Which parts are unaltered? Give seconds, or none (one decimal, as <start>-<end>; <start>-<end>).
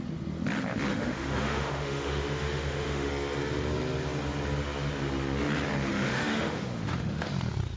0.0-0.9; 3.1-5.9; 7.3-7.8